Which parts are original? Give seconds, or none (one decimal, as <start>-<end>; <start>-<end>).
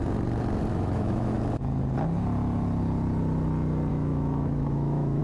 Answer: 0.0-0.7; 1.4-3.9